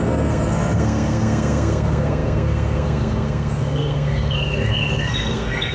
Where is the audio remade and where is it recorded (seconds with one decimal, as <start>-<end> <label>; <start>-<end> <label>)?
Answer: 0.0-5.7 remade